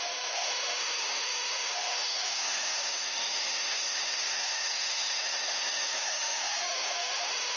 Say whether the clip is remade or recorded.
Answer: remade